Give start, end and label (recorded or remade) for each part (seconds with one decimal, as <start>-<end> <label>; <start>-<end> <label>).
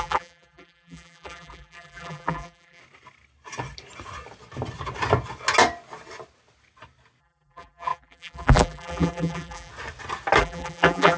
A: 0.0-2.8 remade; 2.8-7.2 recorded; 7.2-9.7 remade; 9.7-10.4 recorded; 10.4-11.2 remade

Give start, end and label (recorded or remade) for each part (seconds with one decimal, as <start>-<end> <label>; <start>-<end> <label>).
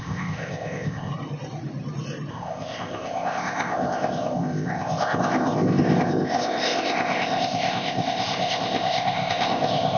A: 0.0-1.1 remade; 1.1-2.3 recorded; 2.3-10.0 remade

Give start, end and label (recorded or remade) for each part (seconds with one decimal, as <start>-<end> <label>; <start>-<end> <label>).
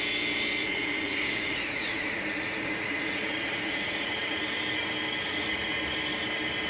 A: 0.0-0.6 recorded; 0.6-4.4 remade; 4.4-5.2 recorded; 5.2-5.8 remade; 5.8-6.7 recorded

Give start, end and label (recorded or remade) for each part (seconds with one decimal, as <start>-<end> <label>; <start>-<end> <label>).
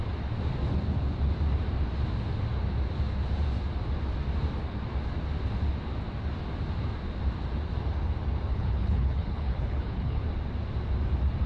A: 0.0-8.5 recorded; 8.5-10.2 remade; 10.2-11.5 recorded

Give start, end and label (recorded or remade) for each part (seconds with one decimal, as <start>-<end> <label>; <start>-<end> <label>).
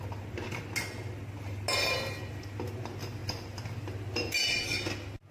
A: 0.0-5.3 recorded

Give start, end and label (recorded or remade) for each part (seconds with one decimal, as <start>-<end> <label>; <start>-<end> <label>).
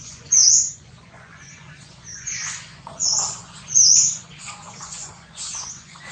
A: 0.0-6.1 remade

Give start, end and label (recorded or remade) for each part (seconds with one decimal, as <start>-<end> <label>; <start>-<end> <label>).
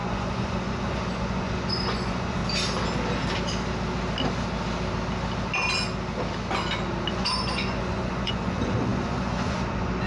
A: 0.0-2.4 remade; 2.4-7.1 recorded; 7.1-10.1 remade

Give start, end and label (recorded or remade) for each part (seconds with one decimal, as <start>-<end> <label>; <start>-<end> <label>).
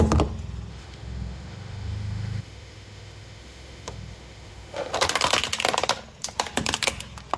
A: 0.0-0.7 recorded; 0.7-4.9 remade; 4.9-7.4 recorded